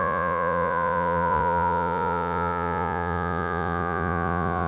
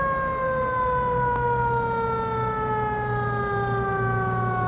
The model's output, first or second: first